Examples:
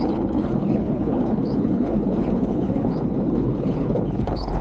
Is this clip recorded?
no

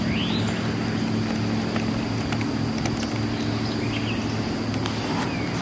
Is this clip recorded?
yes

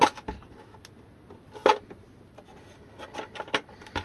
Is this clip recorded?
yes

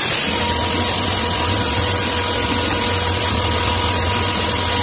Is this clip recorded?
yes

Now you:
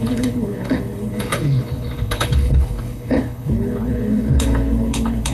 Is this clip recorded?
no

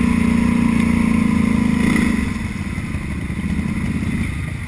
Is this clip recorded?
yes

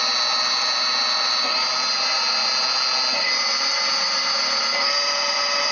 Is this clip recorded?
yes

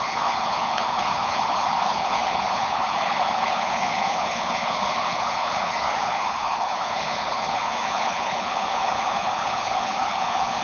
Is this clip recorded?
no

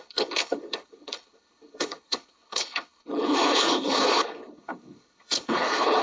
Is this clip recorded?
no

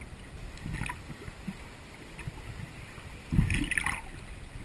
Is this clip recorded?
yes